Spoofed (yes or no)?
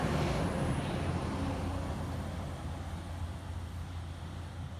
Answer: no